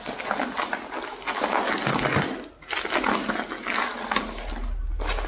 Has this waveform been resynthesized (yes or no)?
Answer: no